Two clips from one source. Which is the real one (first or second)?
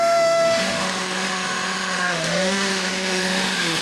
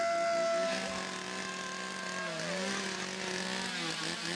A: second